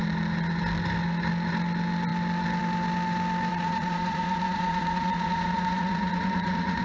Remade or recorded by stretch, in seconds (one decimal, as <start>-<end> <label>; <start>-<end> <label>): 0.0-3.5 recorded; 3.5-6.8 remade